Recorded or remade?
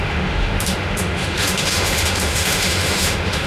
remade